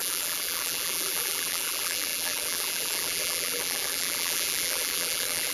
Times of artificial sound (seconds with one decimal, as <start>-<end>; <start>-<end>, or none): 0.0-5.5